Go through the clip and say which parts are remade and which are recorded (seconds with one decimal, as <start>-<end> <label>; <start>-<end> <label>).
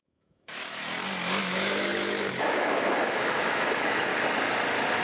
0.0-0.8 remade; 0.8-1.4 recorded; 1.4-4.1 remade; 4.1-5.0 recorded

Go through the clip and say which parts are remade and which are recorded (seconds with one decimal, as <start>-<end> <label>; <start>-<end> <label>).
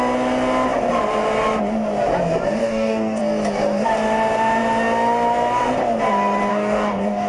0.0-2.6 recorded; 2.6-3.2 remade; 3.2-6.5 recorded; 6.5-7.3 remade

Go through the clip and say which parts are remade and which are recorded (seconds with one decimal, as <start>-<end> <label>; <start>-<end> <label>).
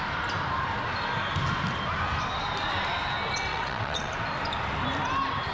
0.0-3.5 recorded; 3.5-4.1 remade; 4.1-5.5 recorded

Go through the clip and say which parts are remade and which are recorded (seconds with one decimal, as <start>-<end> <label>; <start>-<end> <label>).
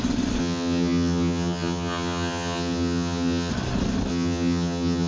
0.0-0.4 recorded; 0.4-3.5 remade; 3.5-4.1 recorded; 4.1-5.1 remade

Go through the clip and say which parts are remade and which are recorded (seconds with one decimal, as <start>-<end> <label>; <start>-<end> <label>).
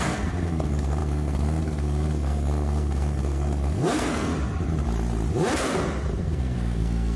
0.0-4.3 remade; 4.3-6.2 recorded; 6.2-7.2 remade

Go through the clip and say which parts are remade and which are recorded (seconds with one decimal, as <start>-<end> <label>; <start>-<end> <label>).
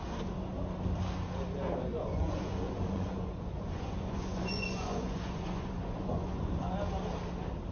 0.0-1.9 recorded; 1.9-6.5 remade; 6.5-7.7 recorded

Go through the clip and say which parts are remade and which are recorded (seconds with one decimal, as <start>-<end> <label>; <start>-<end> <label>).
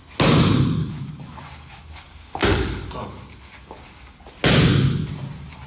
0.0-0.8 recorded; 0.8-4.2 remade; 4.2-5.7 recorded